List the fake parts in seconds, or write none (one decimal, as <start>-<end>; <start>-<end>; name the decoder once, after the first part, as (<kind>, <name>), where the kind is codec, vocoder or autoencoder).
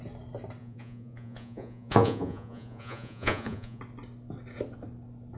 0.6-3.8 (vocoder, Vocos)